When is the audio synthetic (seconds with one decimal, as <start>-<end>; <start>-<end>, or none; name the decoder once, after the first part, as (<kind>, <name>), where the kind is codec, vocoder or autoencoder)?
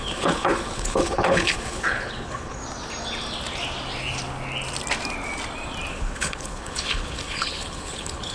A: 0.0-2.6 (codec, HILCodec); 5.9-8.3